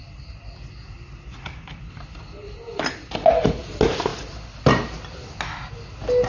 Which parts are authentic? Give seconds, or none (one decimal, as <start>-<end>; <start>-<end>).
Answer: 0.0-6.3

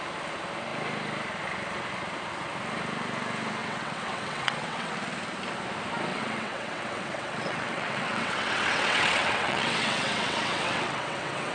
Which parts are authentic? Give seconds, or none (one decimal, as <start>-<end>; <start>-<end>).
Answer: 0.0-3.6; 4.9-6.1

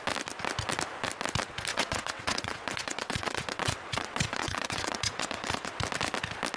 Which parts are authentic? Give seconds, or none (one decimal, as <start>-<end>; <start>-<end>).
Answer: 0.0-1.7; 5.7-6.6

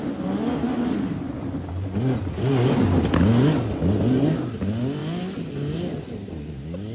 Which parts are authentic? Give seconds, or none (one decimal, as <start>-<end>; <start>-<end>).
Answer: 0.0-6.9

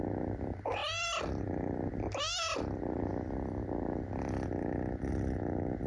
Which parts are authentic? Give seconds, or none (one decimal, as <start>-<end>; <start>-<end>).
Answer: 0.0-5.9

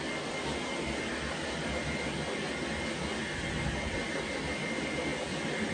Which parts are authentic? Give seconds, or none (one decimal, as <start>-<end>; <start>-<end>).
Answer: 0.0-5.7

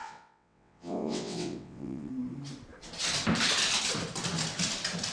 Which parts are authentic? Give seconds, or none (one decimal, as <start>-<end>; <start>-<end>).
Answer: 2.1-5.1